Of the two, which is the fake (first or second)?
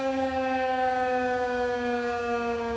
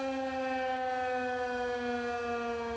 first